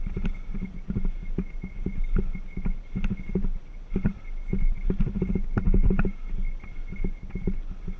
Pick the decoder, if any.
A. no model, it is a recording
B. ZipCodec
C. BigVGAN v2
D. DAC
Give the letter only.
A